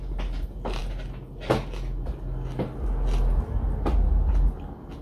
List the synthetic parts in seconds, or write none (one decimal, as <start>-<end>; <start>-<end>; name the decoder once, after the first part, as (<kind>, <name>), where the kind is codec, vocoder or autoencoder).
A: none

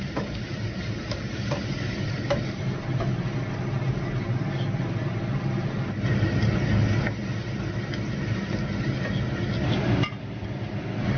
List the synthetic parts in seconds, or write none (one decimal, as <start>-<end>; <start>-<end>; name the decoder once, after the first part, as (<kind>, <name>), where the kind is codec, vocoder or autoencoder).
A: 0.0-2.6 (vocoder, BigVGAN v2)

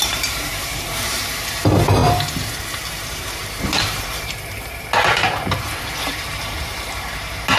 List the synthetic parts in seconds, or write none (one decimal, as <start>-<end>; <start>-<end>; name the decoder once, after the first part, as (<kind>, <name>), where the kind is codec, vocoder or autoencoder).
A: 0.0-7.6 (vocoder, BigVGAN v2)

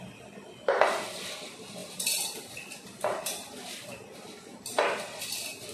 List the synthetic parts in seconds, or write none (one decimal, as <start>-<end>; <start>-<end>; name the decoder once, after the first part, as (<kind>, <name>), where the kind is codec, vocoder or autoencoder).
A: 1.8-5.2 (vocoder, BigVGAN v2)

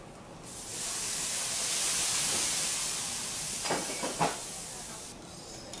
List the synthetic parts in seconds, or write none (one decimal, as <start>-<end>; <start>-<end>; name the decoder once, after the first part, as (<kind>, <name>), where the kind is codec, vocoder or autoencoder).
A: 0.7-4.0 (vocoder, BigVGAN v2); 4.4-5.8